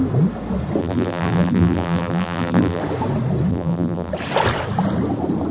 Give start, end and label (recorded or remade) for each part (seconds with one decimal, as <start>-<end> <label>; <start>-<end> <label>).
0.0-0.8 recorded; 0.8-2.8 remade; 2.8-3.5 recorded; 3.5-4.1 remade; 4.1-5.5 recorded